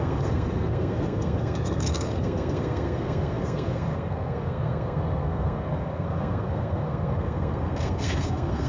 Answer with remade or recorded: remade